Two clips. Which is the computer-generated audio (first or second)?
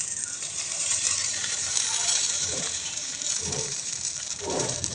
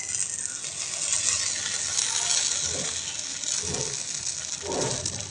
first